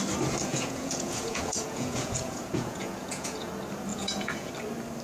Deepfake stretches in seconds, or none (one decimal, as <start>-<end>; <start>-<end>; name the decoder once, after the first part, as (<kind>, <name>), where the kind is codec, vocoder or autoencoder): 0.5-3.5 (vocoder, Vocos); 3.9-4.5